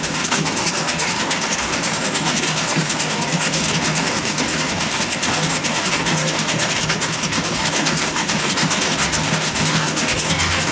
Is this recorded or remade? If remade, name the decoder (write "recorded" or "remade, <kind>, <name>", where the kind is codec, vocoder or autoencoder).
remade, codec, DAC